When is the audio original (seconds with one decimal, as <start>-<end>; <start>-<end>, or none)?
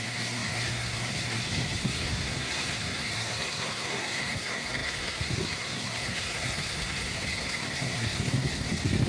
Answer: none